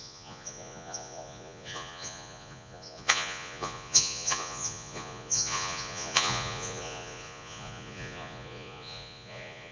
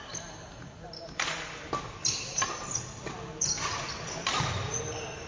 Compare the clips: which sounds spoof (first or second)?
first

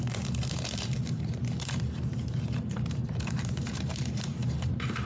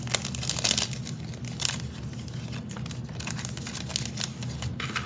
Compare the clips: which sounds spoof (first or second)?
first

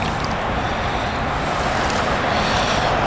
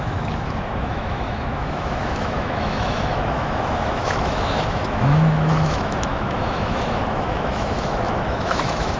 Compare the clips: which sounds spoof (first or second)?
second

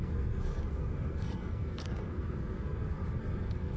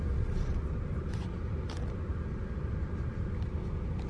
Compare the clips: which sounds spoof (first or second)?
first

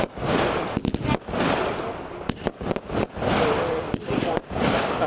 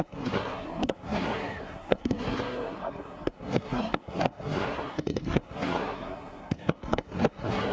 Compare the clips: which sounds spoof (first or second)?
second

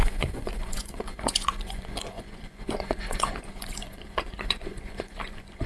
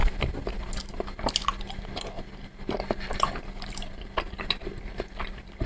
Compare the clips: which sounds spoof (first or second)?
first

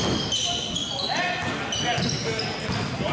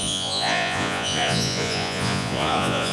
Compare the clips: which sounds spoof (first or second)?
second